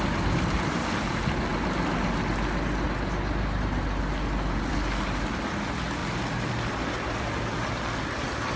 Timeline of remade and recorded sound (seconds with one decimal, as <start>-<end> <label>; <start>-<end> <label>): 0.0-8.6 recorded